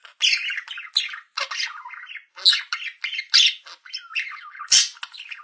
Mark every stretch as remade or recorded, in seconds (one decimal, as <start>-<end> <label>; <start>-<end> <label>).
0.0-5.4 recorded